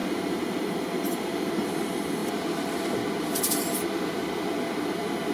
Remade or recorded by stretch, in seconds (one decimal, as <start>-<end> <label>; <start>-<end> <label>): 0.0-2.2 remade; 2.2-3.2 recorded; 3.2-4.2 remade; 4.2-4.8 recorded; 4.8-5.3 remade